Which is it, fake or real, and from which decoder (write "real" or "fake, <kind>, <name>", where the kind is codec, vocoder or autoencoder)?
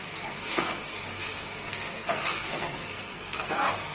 fake, codec, SNAC